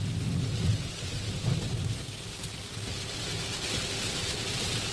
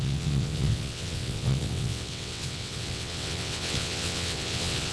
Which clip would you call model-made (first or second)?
second